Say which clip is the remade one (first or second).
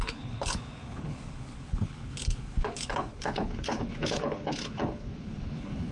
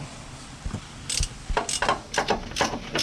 first